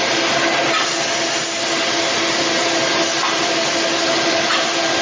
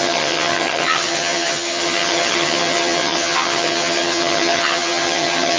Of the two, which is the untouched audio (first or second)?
first